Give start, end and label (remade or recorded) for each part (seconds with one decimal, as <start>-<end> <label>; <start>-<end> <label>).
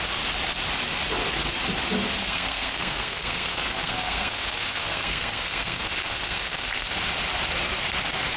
0.0-2.2 recorded; 2.2-6.9 remade; 6.9-8.4 recorded